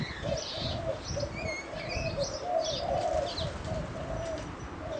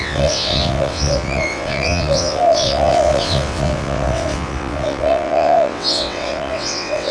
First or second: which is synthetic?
second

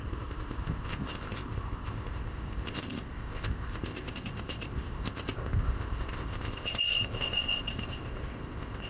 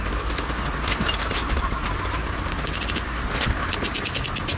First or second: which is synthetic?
first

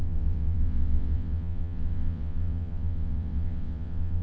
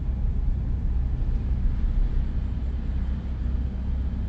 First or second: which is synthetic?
first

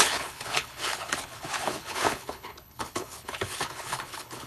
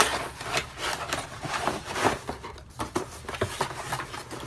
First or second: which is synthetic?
first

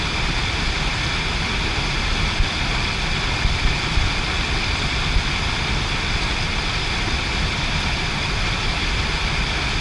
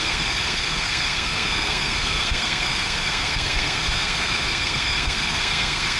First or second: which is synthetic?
second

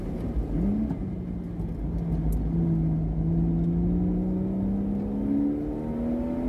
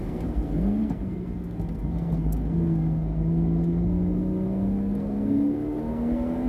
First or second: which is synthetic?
second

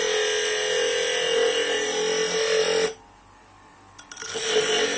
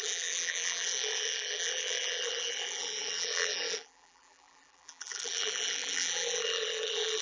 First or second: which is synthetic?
second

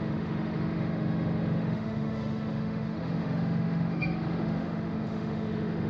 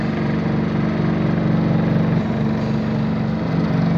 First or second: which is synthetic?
first